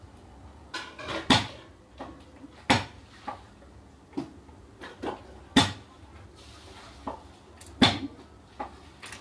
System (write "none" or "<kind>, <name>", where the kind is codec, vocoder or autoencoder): none